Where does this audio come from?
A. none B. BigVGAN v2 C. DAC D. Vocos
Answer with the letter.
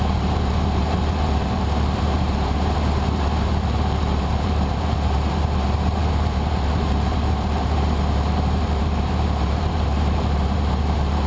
B